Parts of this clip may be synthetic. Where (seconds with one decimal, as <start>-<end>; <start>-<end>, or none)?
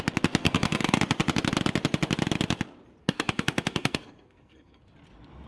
0.4-1.0; 3.0-4.8